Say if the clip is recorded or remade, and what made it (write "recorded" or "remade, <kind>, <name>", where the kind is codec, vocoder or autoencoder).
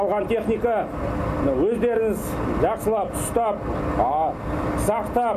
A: recorded